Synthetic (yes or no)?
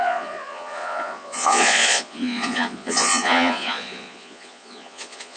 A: yes